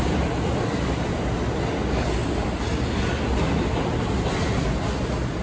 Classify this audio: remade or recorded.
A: recorded